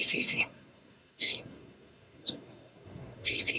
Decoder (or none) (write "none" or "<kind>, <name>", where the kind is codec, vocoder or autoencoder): codec, SNAC